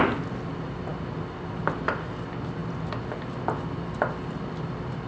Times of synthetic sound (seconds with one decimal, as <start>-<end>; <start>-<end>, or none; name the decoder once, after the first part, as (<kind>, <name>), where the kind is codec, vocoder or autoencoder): none